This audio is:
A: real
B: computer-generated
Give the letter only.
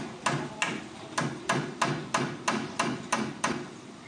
A